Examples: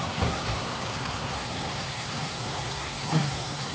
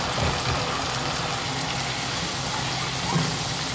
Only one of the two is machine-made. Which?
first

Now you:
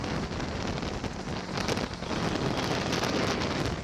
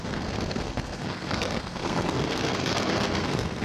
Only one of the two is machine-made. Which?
second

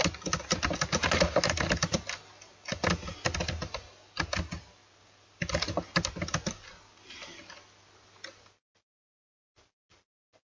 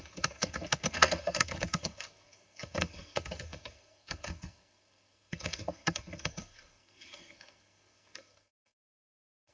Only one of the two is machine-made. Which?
second